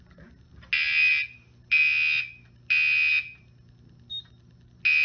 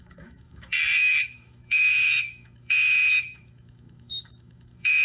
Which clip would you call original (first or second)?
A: first